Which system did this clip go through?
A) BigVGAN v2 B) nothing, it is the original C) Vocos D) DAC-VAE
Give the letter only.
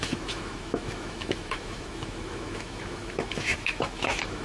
D